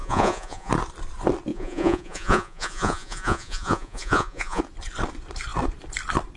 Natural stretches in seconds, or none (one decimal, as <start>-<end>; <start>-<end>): 0.7-1.5; 4.6-6.4